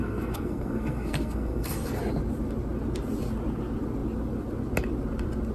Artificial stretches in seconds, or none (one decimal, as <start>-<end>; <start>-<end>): 0.0-2.0

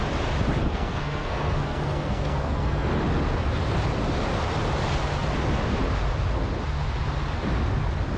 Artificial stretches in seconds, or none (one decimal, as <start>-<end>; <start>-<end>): 0.6-2.9

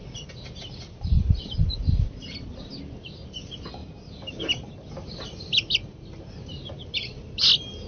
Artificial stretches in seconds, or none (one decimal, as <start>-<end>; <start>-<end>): none

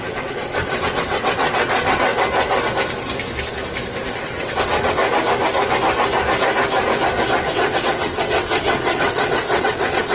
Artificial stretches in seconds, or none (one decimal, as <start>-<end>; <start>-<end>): 0.0-2.1; 4.1-5.0; 7.5-10.1

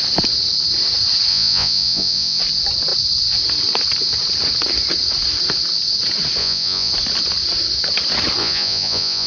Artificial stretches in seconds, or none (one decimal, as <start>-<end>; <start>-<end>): 1.3-2.4; 6.4-6.9; 8.4-9.3

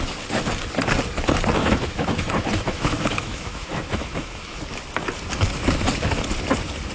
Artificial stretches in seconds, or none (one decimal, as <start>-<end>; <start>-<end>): 1.6-4.6